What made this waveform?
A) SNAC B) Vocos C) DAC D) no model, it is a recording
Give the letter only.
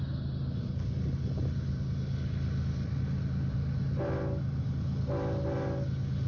D